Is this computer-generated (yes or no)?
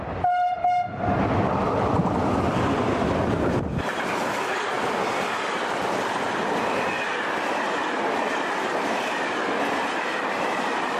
no